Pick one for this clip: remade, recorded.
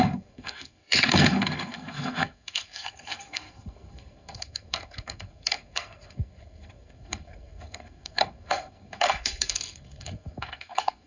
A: remade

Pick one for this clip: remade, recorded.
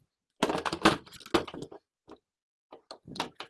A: recorded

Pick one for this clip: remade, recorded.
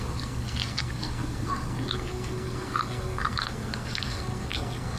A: remade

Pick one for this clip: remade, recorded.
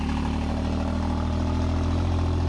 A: recorded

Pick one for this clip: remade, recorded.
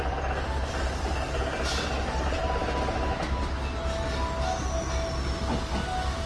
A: recorded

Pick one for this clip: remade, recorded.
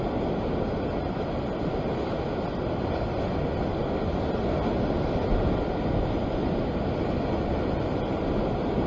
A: recorded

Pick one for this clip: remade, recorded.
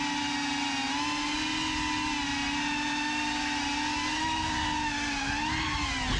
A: recorded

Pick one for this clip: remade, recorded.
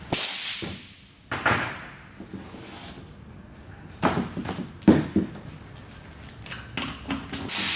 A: recorded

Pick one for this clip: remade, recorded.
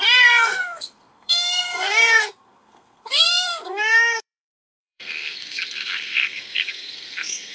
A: remade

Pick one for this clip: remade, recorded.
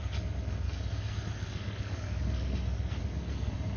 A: remade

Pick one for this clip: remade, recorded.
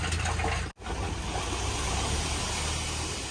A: recorded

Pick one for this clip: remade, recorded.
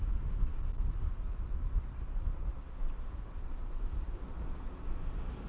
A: recorded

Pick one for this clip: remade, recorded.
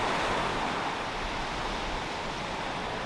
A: recorded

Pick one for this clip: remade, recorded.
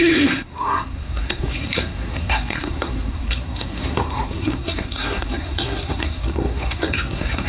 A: remade